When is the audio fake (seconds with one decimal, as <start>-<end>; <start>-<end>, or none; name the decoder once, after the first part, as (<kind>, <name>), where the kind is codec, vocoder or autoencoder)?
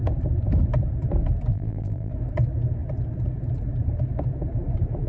1.5-2.1 (vocoder, BigVGAN v2)